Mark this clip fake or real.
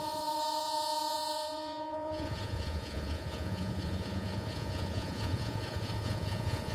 fake